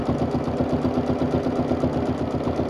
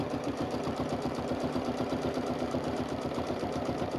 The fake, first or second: second